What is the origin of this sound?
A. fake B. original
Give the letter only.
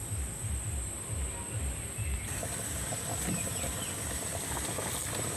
B